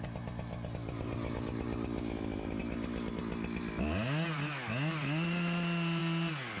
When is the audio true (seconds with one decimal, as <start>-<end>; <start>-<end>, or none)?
0.0-6.6